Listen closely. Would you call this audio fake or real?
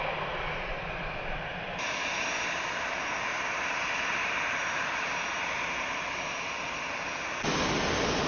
real